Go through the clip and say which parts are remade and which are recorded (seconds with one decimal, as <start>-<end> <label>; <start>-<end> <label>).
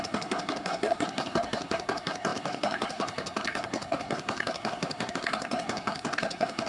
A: 0.0-6.7 remade